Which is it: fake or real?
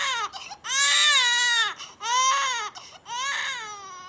real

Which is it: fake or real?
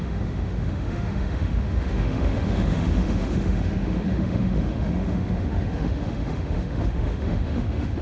fake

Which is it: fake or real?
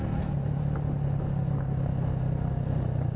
real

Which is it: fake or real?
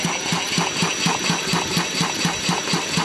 real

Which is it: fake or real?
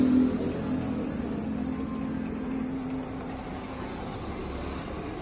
real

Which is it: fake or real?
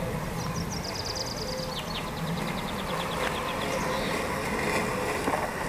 real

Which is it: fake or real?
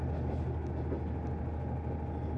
real